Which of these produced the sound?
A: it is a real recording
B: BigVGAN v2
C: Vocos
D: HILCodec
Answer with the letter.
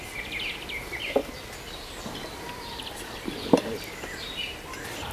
B